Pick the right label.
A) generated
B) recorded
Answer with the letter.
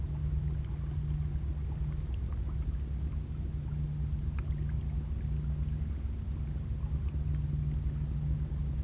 B